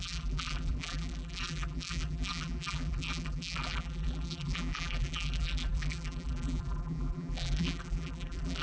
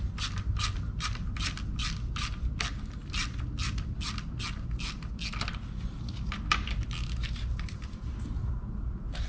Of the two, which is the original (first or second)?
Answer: second